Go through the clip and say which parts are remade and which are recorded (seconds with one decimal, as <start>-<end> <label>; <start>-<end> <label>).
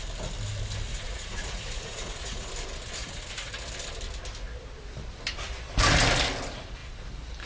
0.0-0.9 recorded; 0.9-2.5 remade; 2.5-3.0 recorded; 3.0-3.5 remade; 3.5-7.5 recorded